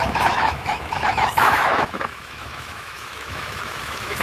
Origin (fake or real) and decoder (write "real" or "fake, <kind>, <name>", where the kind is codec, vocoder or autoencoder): fake, autoencoder, DAC-VAE